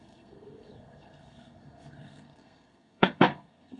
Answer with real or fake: fake